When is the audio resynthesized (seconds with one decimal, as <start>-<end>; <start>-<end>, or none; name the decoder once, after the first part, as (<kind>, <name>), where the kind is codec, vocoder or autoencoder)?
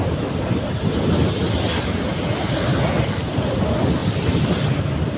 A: none